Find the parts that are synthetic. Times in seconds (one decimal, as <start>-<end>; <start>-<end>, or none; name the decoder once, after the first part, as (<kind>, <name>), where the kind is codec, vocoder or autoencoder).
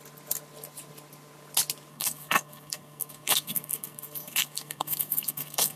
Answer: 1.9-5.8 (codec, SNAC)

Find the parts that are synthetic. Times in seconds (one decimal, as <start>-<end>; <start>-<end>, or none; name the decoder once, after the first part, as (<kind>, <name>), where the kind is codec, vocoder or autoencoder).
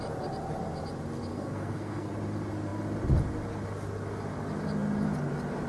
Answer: 1.3-2.1 (codec, SNAC)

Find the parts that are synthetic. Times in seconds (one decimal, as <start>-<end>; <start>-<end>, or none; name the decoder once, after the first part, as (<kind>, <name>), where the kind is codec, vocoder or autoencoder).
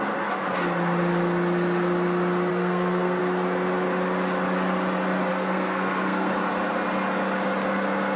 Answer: 2.5-3.2 (codec, SNAC); 5.3-6.3